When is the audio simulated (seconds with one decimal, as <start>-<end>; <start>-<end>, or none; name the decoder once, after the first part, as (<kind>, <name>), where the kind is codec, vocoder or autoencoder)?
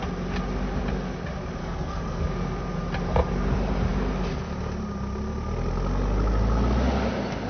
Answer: 1.6-2.2 (codec, SNAC)